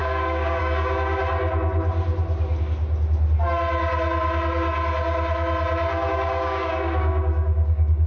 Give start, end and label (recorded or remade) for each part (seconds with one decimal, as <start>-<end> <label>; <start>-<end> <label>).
0.0-1.2 remade; 1.2-6.1 recorded; 6.1-8.1 remade